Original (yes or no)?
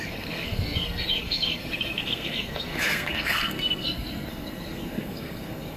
no